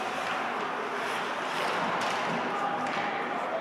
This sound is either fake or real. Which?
real